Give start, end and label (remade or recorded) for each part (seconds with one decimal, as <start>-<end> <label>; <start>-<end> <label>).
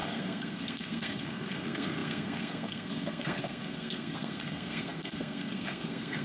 0.0-6.2 remade